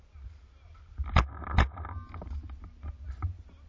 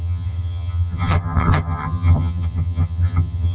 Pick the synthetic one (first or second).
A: second